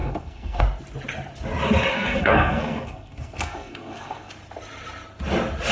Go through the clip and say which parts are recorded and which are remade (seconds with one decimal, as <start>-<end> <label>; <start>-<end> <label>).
0.0-0.6 remade; 0.6-1.9 recorded; 1.9-4.3 remade; 4.3-5.7 recorded